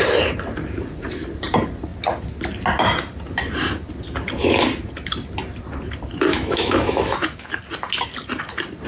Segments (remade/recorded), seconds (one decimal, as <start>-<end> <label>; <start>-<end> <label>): 0.0-6.3 recorded; 6.3-7.6 remade; 7.6-8.9 recorded